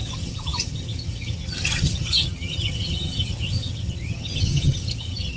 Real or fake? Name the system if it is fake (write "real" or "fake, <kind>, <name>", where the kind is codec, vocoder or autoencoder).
fake, vocoder, HiFi-GAN